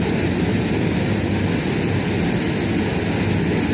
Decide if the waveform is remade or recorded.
recorded